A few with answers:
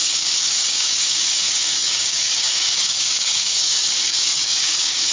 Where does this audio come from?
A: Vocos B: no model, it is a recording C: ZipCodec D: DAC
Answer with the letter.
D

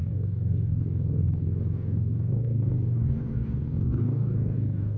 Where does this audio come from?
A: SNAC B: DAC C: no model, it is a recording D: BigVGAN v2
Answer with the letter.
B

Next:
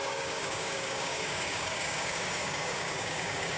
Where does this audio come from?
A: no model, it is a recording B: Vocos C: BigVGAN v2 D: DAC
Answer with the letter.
D